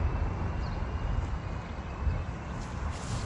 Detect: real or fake real